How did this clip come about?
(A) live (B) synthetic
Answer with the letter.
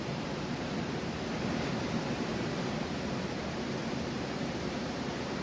B